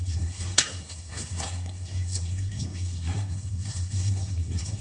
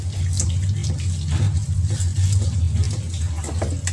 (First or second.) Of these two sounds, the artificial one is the first